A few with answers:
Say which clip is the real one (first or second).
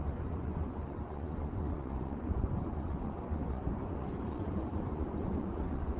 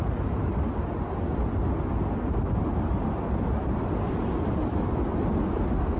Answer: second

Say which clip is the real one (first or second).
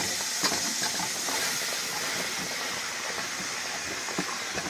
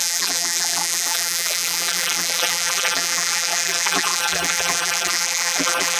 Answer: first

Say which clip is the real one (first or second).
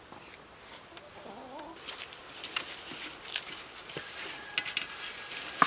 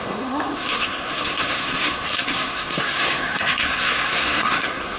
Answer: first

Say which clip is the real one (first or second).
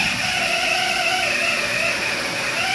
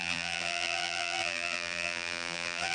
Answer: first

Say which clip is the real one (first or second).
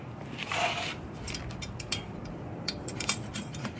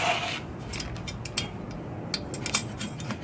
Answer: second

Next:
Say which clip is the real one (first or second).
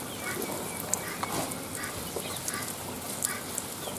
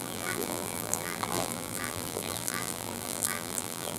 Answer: first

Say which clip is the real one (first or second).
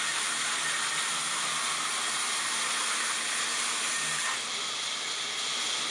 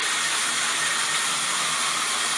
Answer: first